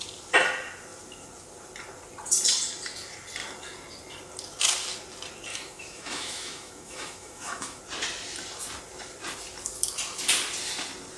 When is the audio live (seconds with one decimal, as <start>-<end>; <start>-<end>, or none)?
0.0-5.5; 7.8-11.2